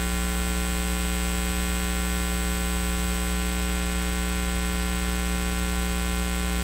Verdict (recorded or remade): recorded